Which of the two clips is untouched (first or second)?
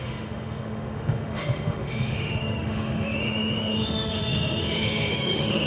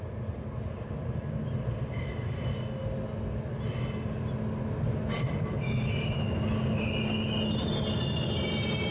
second